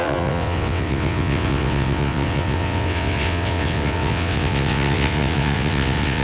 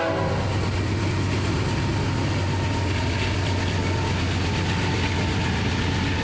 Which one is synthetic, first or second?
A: first